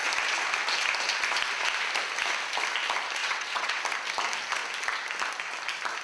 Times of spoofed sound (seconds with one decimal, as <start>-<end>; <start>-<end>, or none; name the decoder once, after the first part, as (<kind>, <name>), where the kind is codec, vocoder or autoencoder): 3.2-3.8 (vocoder, WaveNeXt)